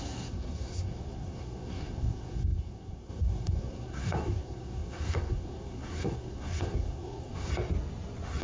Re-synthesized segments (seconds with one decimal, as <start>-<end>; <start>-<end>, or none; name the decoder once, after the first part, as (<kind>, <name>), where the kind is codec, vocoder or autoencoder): 0.0-7.5 (codec, SNAC)